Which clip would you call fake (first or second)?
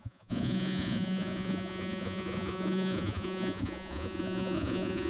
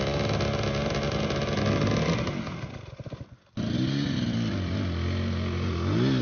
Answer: first